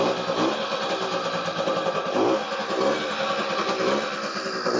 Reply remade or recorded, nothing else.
recorded